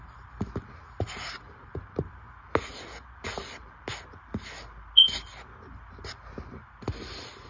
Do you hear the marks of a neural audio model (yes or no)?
no